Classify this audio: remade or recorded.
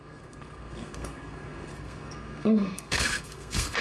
remade